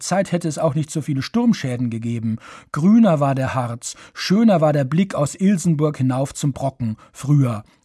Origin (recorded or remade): recorded